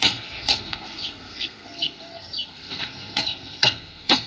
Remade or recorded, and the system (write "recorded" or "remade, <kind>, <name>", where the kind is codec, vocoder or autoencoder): remade, codec, SNAC